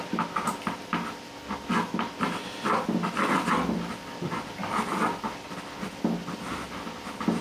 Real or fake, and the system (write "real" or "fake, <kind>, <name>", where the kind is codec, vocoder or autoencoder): real